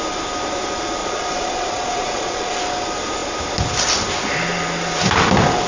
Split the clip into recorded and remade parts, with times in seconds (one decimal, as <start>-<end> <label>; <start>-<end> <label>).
0.0-1.0 recorded; 1.0-2.6 remade; 2.6-5.7 recorded